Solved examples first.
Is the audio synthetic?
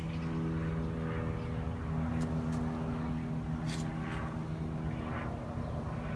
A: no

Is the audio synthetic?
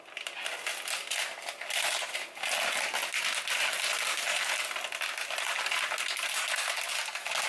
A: no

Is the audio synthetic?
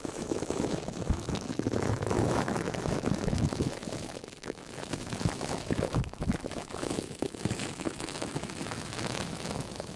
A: yes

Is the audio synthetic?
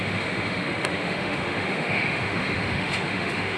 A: yes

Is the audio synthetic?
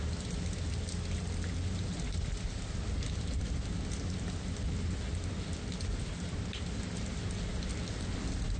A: no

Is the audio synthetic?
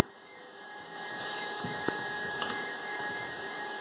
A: yes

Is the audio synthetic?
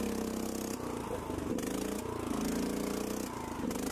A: no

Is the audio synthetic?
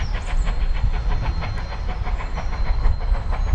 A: no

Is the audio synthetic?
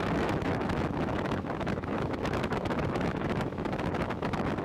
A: yes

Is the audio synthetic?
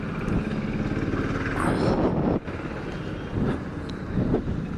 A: no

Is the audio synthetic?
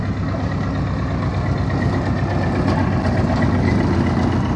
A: no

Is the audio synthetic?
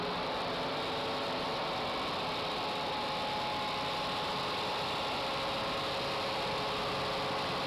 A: no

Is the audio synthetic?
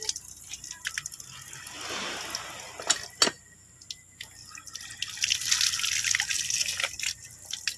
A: no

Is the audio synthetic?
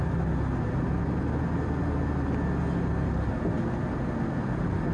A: no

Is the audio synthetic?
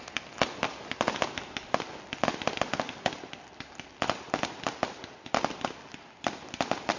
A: no